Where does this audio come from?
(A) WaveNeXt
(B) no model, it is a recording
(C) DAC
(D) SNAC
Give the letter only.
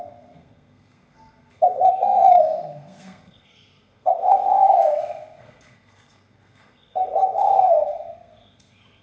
D